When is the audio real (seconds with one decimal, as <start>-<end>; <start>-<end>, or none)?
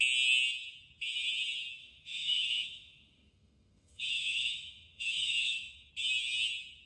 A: 0.0-1.8; 5.9-6.9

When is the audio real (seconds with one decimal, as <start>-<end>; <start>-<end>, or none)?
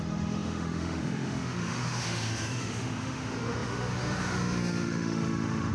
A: none